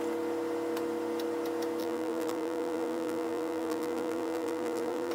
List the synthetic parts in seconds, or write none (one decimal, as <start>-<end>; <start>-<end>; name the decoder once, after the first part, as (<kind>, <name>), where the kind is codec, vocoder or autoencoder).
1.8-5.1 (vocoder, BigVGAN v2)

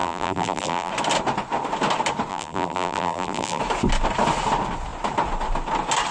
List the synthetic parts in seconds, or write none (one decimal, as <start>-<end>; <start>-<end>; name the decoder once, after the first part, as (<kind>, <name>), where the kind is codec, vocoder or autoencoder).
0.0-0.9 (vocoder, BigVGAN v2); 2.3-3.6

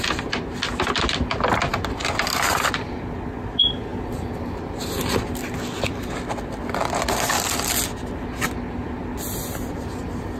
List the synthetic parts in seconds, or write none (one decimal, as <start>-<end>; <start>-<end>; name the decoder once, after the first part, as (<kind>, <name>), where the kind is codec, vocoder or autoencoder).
none